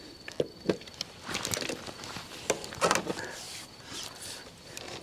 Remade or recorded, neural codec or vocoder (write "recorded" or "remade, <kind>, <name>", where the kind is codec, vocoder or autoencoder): recorded